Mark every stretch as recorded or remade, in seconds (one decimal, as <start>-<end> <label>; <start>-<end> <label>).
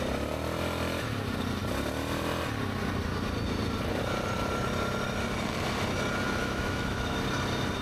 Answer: 0.0-6.4 recorded; 6.4-7.2 remade; 7.2-7.8 recorded